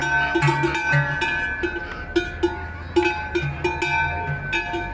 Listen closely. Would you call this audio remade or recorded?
recorded